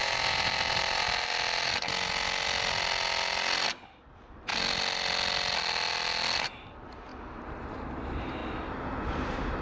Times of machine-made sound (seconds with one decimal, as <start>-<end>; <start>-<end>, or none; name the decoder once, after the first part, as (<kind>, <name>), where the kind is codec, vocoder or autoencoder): 0.0-1.3 (vocoder, BigVGAN v2); 4.1-4.5; 6.4-8.4; 9.0-9.6